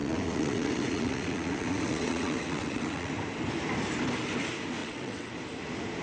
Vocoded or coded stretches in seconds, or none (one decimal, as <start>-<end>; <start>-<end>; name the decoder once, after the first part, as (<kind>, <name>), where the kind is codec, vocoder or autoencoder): 0.0-3.1 (vocoder, WaveNeXt); 4.8-5.3